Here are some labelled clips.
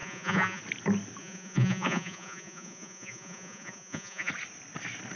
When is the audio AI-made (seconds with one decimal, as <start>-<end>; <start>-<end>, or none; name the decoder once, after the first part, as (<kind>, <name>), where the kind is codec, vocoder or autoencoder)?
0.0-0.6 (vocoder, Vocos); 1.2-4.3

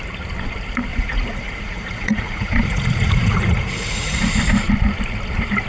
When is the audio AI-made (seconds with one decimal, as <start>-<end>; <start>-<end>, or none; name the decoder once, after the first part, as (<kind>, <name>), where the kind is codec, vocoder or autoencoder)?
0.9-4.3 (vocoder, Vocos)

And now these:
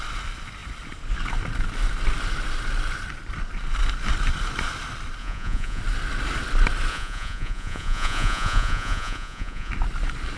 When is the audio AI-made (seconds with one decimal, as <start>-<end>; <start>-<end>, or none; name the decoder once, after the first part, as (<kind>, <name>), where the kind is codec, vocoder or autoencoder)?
5.2-5.8 (vocoder, Vocos); 6.9-9.7

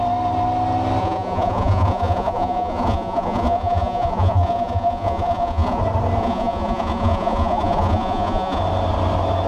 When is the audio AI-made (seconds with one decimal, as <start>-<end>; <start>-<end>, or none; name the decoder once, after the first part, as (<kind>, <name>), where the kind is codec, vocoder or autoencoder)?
1.0-5.8 (vocoder, Vocos); 6.2-8.6